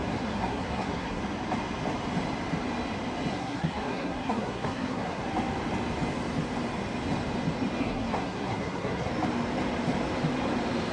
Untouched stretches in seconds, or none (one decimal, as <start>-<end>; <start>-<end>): 1.2-3.3; 5.2-7.8; 9.1-10.9